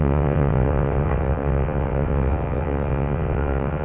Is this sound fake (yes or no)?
yes